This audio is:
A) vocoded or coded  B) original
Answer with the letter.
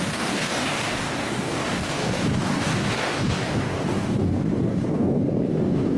A